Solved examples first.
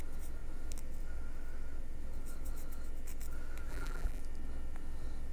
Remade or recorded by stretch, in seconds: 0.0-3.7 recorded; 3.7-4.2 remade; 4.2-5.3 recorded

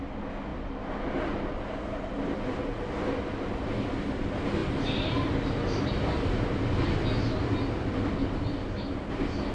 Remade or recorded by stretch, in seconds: 0.0-9.5 recorded

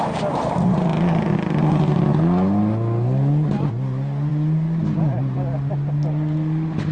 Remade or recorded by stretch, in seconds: 0.0-4.3 recorded; 4.3-5.7 remade; 5.7-6.9 recorded

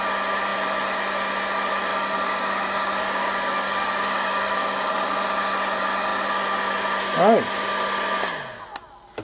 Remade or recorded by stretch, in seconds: 0.0-1.9 recorded; 1.9-4.9 remade; 4.9-9.2 recorded

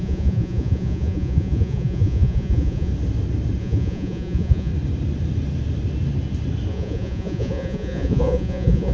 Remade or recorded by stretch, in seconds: 0.0-2.9 remade; 2.9-3.6 recorded; 3.6-4.7 remade; 4.7-6.7 recorded; 6.7-8.9 remade

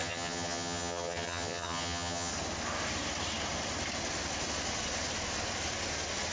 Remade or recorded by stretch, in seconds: 0.0-2.3 remade; 2.3-6.3 recorded

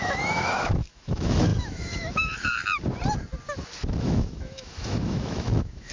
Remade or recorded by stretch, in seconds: 0.0-2.6 remade; 2.6-4.0 recorded; 4.0-5.9 remade

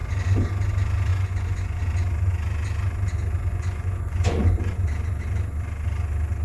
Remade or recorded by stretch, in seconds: 0.0-1.1 recorded; 1.1-1.8 remade; 1.8-3.5 recorded; 3.5-4.7 remade; 4.7-6.4 recorded